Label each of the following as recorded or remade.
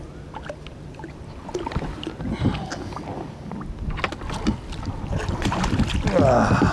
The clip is recorded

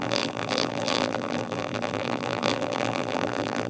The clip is remade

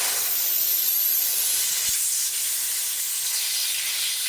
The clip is recorded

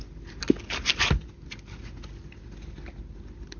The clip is recorded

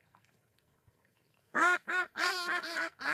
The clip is remade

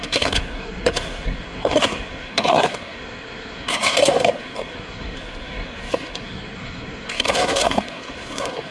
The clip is remade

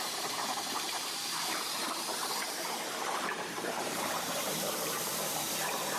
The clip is remade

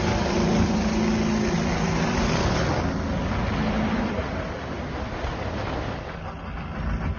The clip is recorded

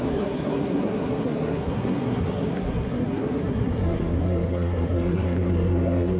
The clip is remade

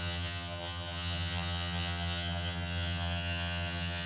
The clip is remade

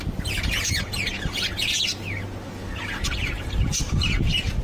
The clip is recorded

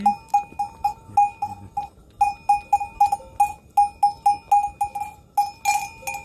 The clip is recorded